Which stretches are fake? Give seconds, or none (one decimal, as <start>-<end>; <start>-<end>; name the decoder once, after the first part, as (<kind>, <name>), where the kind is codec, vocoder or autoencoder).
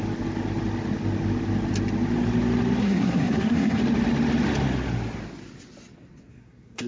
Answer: 2.8-3.8 (codec, SNAC); 6.3-6.9